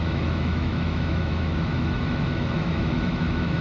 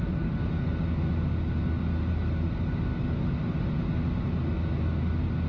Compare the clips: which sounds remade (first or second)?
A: first